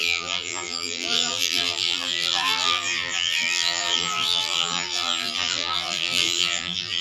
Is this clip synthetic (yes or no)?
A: yes